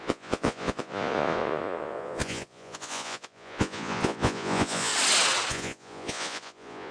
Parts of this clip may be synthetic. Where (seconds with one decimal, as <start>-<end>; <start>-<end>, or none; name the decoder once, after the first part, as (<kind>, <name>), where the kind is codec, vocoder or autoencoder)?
0.0-4.9 (vocoder, Vocos); 5.5-6.9